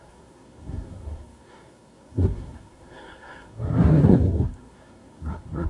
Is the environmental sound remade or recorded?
remade